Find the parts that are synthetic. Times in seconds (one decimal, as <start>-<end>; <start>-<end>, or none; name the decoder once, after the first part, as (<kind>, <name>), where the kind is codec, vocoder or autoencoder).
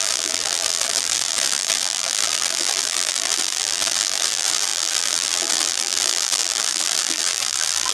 0.0-7.9 (vocoder, BigVGAN v2)